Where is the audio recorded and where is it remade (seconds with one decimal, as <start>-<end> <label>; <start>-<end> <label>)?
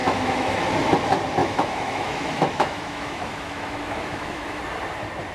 0.0-0.6 remade; 0.6-1.4 recorded; 1.4-4.6 remade; 4.6-5.3 recorded